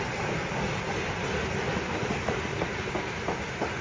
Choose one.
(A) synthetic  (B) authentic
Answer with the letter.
B